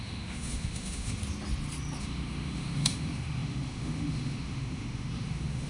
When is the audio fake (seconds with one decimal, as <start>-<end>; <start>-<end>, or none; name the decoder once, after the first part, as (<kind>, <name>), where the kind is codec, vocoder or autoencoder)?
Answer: 0.0-1.2 (autoencoder, DAC-VAE); 2.0-5.7